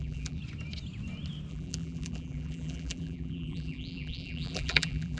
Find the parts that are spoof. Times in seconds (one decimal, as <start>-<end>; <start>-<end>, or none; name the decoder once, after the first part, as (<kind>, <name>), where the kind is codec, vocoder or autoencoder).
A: 0.0-0.4 (vocoder, BigVGAN v2); 1.5-5.2